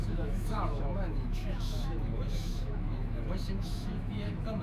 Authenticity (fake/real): fake